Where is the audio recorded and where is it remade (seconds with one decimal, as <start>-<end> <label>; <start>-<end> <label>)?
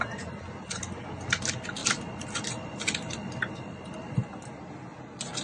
0.0-5.4 recorded